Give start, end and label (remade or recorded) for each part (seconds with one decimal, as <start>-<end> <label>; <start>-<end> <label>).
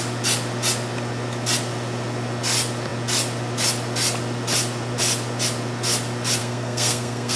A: 0.0-6.4 recorded; 6.4-7.4 remade